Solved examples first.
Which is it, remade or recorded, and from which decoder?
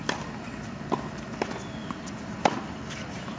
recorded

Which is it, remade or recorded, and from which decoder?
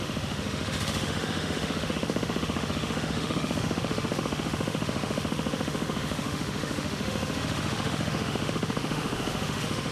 remade, autoencoder, DAC-VAE